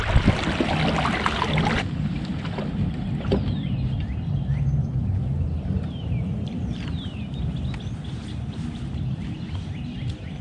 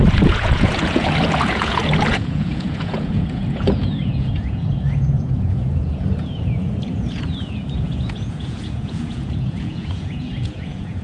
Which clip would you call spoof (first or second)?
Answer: second